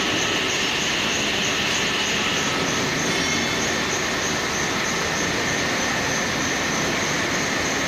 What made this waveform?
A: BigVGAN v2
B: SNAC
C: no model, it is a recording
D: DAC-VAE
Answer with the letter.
C